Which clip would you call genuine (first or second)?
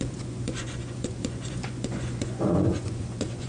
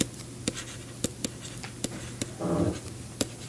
second